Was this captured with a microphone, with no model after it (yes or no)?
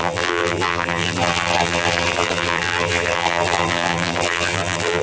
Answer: no